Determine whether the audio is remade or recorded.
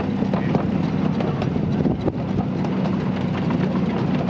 recorded